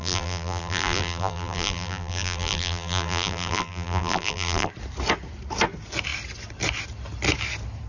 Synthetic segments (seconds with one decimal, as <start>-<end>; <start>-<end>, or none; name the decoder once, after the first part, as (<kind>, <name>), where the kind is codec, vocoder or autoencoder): 0.0-4.7 (vocoder, BigVGAN v2)